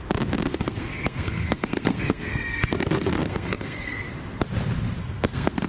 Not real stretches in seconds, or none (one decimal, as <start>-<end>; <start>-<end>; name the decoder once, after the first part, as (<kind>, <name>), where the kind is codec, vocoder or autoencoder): 0.5-3.9 (codec, SNAC); 5.0-5.7